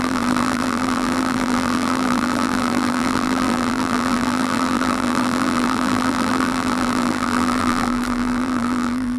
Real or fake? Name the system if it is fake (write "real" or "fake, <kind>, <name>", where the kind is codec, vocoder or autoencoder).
fake, vocoder, BigVGAN v2